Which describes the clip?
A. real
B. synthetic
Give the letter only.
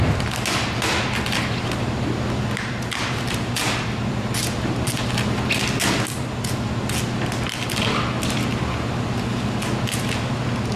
A